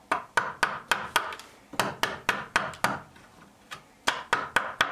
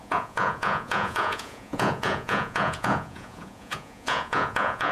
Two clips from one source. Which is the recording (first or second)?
first